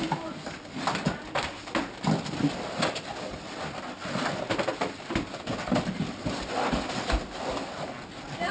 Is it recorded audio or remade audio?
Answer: recorded